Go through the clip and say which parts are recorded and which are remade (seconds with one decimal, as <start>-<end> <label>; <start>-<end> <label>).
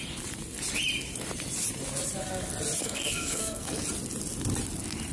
0.0-2.8 recorded; 2.8-3.8 remade; 3.8-5.1 recorded